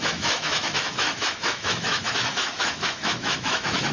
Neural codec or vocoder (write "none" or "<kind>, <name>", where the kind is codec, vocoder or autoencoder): autoencoder, DAC-VAE